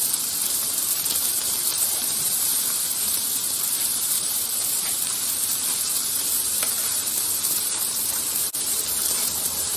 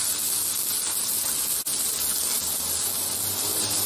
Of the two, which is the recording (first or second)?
second